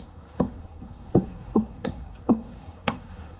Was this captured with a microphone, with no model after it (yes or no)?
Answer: no